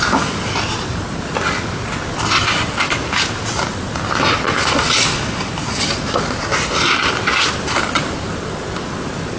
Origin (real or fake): real